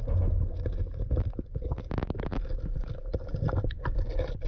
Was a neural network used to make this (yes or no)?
no